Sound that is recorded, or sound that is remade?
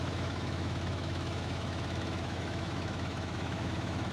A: remade